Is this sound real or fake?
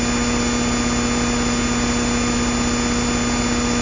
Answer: real